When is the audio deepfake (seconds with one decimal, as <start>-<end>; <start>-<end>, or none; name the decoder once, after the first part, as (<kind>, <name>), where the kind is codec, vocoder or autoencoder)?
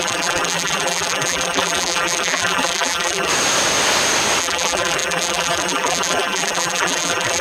0.0-3.3 (vocoder, BigVGAN v2); 4.4-7.4